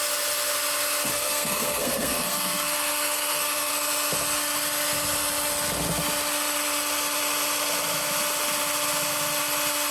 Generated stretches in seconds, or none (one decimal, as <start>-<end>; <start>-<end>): 1.1-3.7